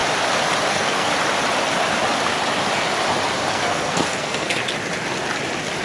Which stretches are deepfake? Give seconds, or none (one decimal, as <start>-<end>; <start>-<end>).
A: 0.7-1.1; 3.5-4.6